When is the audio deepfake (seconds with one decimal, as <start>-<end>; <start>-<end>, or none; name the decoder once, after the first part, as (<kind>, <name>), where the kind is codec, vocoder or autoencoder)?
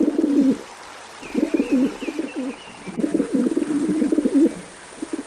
1.5-4.7 (vocoder, BigVGAN v2)